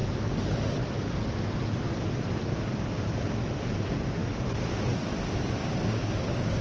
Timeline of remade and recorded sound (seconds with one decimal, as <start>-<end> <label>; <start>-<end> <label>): 0.0-5.6 recorded; 5.6-6.6 remade